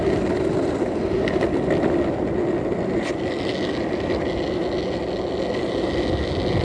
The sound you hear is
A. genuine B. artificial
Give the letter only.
A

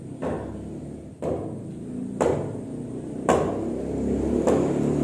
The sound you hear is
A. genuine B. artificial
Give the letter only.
A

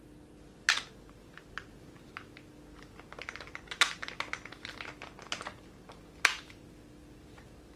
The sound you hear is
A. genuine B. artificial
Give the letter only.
A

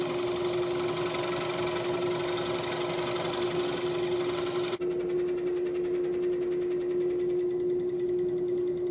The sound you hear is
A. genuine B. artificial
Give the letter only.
A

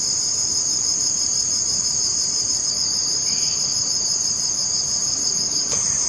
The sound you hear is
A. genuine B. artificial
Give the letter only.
B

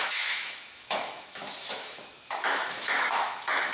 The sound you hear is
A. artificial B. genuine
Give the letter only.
A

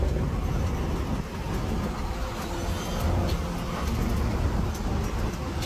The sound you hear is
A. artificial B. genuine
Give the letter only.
B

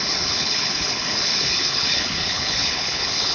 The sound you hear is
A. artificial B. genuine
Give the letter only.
A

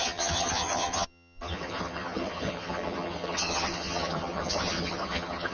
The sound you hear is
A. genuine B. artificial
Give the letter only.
B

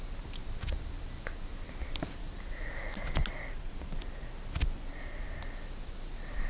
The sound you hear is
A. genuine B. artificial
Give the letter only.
A